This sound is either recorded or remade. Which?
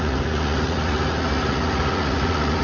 remade